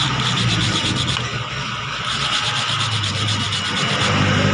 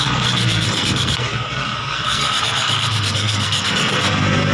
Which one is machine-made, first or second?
second